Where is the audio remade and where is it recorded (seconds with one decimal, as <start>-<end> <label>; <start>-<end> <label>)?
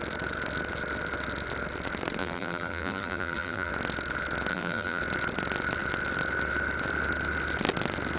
0.0-2.2 recorded; 2.2-3.7 remade; 3.7-4.5 recorded; 4.5-5.0 remade; 5.0-8.2 recorded